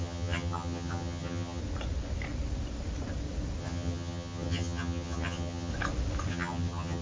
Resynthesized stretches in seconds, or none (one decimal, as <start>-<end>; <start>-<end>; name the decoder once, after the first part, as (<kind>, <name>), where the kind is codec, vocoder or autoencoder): 0.0-1.6 (vocoder, HiFi-GAN); 3.6-5.7; 6.3-7.0